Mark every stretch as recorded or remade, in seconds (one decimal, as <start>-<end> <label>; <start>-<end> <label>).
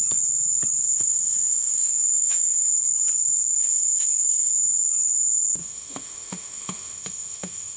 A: 0.0-0.8 recorded; 0.8-2.7 remade; 2.7-3.6 recorded; 3.6-4.5 remade; 4.5-5.6 recorded; 5.6-7.8 remade